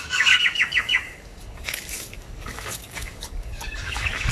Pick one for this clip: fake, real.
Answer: fake